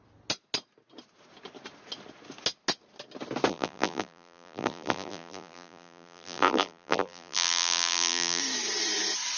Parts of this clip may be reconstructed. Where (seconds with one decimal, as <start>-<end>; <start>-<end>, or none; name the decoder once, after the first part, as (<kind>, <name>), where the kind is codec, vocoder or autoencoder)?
3.5-8.4 (vocoder, BigVGAN v2)